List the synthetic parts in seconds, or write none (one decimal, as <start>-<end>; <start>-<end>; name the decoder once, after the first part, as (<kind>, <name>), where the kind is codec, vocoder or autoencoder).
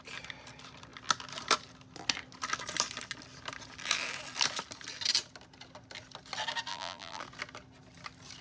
6.7-7.2 (vocoder, BigVGAN v2)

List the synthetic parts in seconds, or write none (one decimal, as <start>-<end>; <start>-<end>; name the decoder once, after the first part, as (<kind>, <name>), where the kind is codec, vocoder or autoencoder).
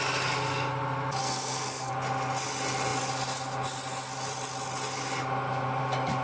1.2-1.9 (codec, SNAC)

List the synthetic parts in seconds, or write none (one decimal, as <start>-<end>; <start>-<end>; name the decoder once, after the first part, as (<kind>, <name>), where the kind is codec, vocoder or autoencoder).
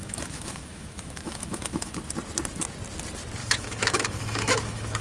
0.0-2.0 (autoencoder, DAC-VAE); 3.4-5.0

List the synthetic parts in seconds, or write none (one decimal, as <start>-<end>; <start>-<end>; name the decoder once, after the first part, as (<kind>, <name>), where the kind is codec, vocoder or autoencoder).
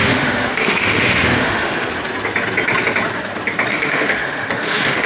0.0-1.9 (autoencoder, DAC-VAE); 3.7-5.1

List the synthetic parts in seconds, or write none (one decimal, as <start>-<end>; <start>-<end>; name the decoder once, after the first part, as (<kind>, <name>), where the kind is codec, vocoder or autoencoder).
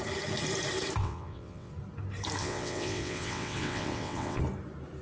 1.0-1.7 (vocoder, WaveNeXt); 2.4-4.4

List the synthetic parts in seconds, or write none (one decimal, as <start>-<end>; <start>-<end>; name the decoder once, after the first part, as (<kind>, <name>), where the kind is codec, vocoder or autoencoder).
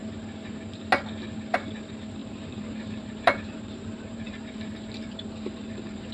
0.0-0.9 (vocoder, BigVGAN v2); 2.2-6.1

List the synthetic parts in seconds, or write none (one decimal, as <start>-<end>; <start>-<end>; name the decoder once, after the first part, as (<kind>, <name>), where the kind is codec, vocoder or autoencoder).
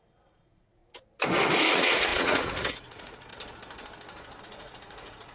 0.0-0.8 (vocoder, Vocos); 1.7-3.3; 4.4-5.3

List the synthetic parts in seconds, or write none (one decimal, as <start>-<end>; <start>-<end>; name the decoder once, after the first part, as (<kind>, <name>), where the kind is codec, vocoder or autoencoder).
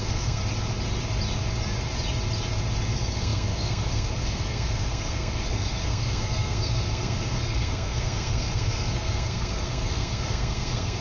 0.0-0.4 (codec, SNAC); 2.8-11.0